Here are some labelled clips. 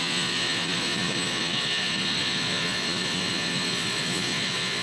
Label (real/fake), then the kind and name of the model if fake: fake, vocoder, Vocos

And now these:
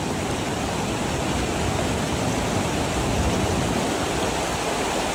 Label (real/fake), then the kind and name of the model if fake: real